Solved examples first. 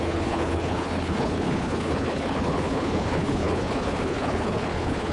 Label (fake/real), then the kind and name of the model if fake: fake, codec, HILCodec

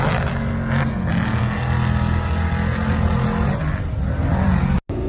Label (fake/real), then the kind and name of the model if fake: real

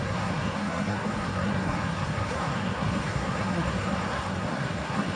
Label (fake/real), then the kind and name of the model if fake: fake, codec, SNAC